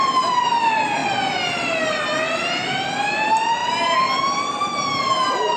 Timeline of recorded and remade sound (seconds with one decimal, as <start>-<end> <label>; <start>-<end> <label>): 0.0-5.6 recorded